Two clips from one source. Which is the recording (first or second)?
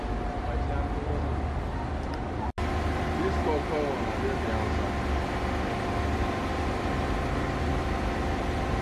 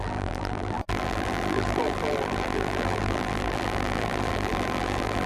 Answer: first